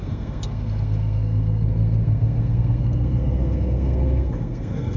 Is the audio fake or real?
fake